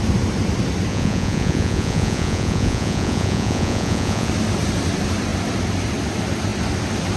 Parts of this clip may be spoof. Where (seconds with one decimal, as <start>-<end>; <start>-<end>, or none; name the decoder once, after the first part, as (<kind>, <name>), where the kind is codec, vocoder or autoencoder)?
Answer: 0.9-4.3 (vocoder, Vocos)